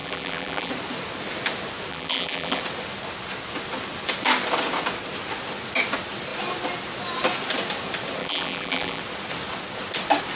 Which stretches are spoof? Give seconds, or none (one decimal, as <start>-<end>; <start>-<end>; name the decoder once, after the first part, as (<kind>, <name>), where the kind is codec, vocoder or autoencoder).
0.0-0.7 (vocoder, BigVGAN v2); 1.9-2.6; 8.2-9.0